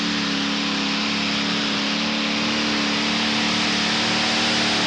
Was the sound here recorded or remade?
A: recorded